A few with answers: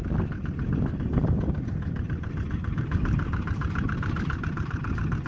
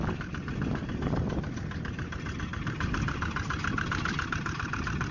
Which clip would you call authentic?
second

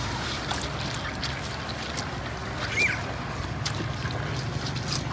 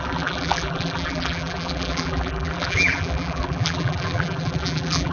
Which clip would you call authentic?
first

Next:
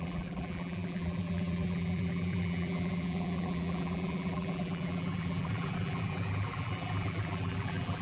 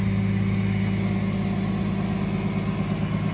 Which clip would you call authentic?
second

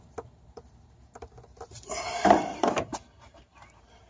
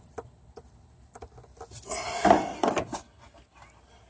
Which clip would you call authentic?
second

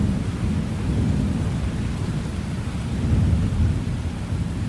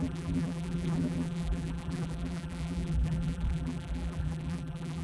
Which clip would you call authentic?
first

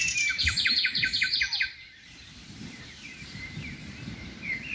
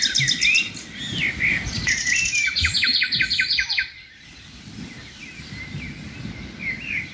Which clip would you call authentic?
second